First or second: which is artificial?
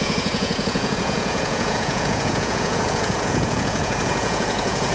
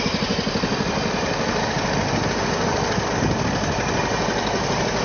first